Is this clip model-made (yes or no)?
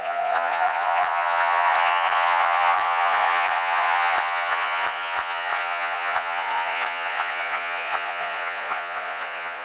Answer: yes